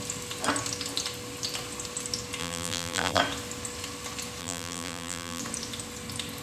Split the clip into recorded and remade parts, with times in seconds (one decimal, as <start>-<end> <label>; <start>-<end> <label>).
0.0-2.4 recorded; 2.4-3.2 remade; 3.2-4.4 recorded; 4.4-5.4 remade; 5.4-6.4 recorded